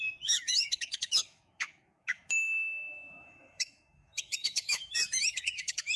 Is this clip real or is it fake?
fake